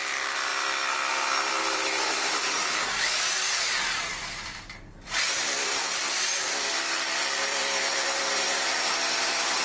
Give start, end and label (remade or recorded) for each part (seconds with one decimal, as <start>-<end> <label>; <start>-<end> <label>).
0.0-0.5 remade; 0.5-1.6 recorded; 1.6-9.6 remade

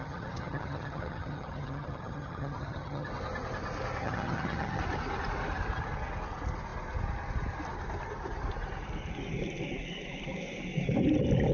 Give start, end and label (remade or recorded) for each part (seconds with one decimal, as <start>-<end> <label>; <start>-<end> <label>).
0.0-3.1 remade; 3.1-4.0 recorded; 4.0-4.8 remade; 4.8-11.5 recorded

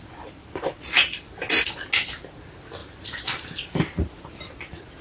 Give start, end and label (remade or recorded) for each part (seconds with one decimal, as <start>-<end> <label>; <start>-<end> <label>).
0.0-0.4 recorded; 0.4-1.3 remade; 1.3-2.8 recorded; 2.8-4.2 remade; 4.2-5.0 recorded

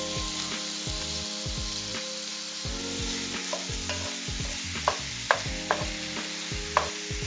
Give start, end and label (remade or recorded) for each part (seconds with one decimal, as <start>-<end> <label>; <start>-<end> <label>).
0.0-7.3 recorded